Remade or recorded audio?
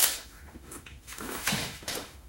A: remade